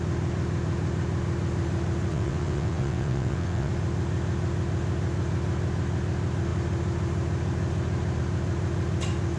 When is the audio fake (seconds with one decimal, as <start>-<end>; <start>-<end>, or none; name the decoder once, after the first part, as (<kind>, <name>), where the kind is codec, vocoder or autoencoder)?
2.1-3.7 (vocoder, WaveNeXt)